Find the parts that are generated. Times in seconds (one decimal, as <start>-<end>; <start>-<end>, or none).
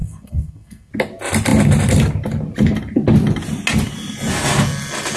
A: 0.0-0.9